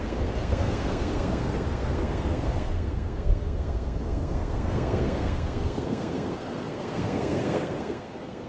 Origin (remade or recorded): remade